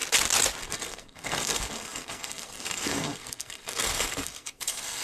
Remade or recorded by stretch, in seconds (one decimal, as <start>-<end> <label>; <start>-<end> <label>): 0.0-0.6 recorded; 0.6-5.0 remade